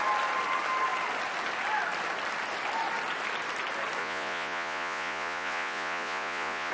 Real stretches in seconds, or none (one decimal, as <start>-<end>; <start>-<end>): 0.0-4.0